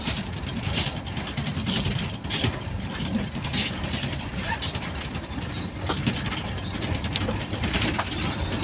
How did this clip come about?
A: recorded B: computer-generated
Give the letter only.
B